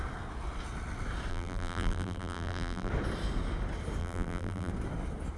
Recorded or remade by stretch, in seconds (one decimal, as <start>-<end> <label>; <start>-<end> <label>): 0.0-1.3 recorded; 1.3-2.9 remade; 2.9-4.0 recorded; 4.0-4.7 remade; 4.7-5.4 recorded